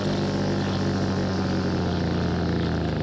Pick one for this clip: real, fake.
real